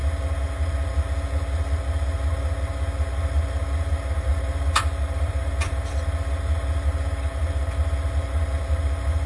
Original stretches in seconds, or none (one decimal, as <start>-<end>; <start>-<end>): 0.0-4.3; 6.0-9.3